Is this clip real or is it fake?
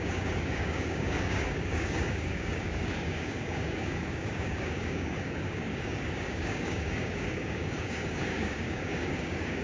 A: fake